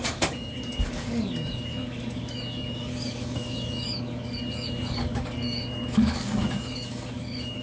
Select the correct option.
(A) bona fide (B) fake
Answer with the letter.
B